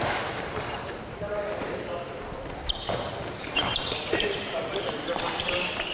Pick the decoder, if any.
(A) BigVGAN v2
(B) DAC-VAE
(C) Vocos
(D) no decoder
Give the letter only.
A